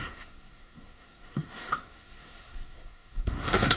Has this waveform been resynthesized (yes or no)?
yes